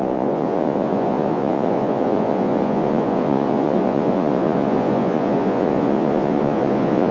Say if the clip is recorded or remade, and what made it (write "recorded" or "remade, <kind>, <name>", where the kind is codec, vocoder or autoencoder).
remade, vocoder, Vocos